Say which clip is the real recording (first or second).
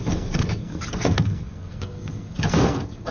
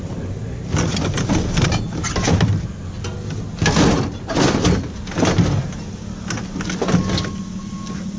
second